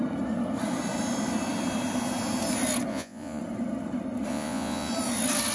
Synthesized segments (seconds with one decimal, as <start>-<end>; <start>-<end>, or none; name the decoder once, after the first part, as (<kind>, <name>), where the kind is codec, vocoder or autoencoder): 2.9-3.4 (vocoder, Vocos); 4.3-4.9